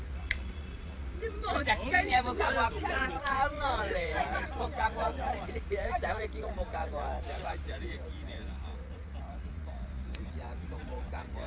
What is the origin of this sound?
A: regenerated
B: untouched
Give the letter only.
A